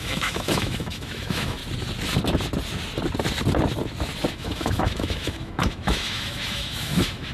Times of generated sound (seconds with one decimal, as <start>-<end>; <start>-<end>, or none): 0.0-1.6; 4.3-7.3